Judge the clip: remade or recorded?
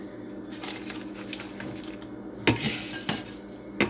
recorded